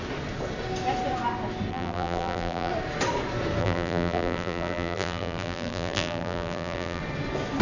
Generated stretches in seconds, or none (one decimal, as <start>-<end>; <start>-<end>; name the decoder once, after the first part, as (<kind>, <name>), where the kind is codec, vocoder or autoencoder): 1.7-2.7 (vocoder, BigVGAN v2); 3.6-7.0